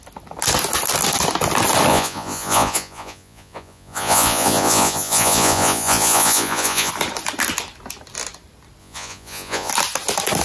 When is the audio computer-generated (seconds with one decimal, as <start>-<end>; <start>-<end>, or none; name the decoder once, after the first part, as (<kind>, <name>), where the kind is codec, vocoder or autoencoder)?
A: 1.9-6.9 (vocoder, Vocos); 8.8-9.7